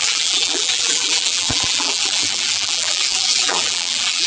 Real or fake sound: fake